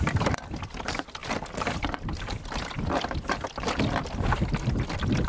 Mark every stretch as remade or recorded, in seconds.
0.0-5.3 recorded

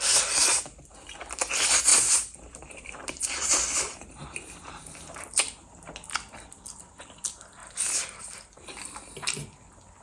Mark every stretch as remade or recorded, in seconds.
0.0-1.9 recorded; 1.9-5.9 remade; 5.9-10.0 recorded

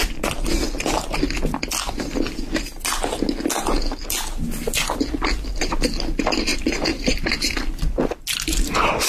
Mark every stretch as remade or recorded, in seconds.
0.0-6.5 recorded; 6.5-7.3 remade; 7.3-9.1 recorded

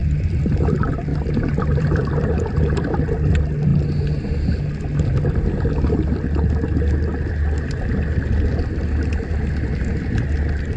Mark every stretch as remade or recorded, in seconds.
0.0-1.1 recorded; 1.1-2.6 remade; 2.6-10.8 recorded

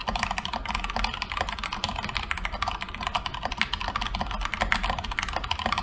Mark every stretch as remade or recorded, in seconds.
0.0-5.8 recorded